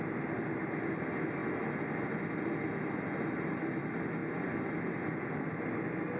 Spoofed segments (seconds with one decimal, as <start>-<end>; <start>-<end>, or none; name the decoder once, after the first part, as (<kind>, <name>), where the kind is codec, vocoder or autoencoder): none